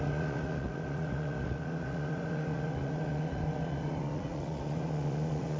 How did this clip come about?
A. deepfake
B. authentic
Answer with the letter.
A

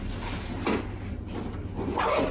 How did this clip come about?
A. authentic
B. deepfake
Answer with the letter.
A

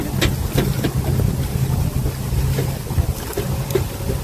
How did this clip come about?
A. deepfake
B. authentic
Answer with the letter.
B